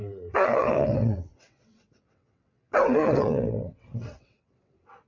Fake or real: fake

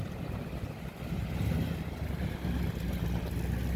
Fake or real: real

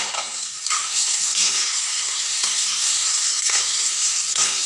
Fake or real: fake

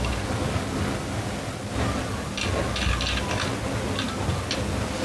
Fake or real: real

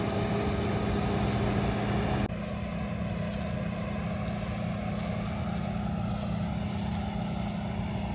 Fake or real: real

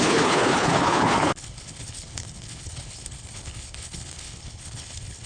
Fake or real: fake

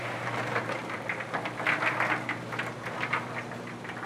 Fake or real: real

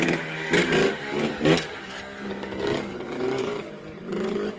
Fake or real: fake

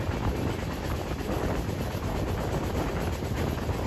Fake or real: real